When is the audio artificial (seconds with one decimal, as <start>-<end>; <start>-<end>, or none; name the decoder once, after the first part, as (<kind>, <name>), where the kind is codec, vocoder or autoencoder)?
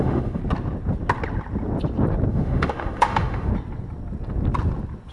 0.0-0.4 (autoencoder, DAC-VAE); 2.3-3.5